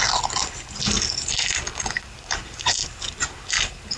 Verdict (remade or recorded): recorded